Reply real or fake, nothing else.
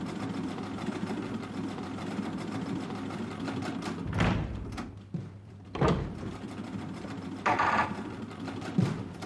fake